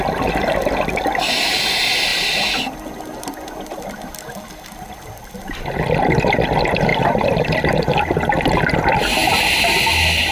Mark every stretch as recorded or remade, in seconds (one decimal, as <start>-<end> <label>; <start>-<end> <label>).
0.0-10.3 recorded